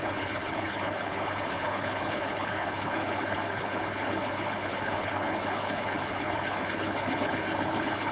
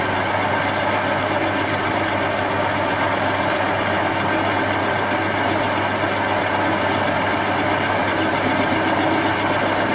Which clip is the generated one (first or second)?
first